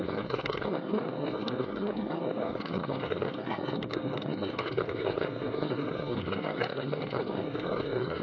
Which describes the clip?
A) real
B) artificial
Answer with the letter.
B